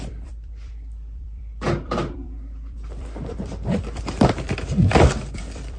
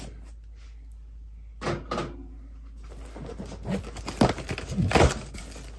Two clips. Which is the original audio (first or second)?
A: second